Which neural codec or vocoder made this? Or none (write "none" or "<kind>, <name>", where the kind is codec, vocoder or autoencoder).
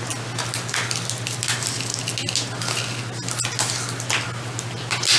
none